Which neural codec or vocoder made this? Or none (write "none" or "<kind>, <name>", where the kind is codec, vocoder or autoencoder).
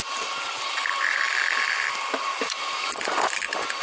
vocoder, BigVGAN v2